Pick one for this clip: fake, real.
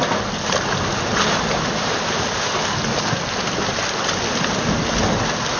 real